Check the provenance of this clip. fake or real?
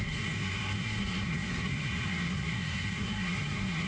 fake